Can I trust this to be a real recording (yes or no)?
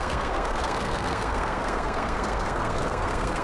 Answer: no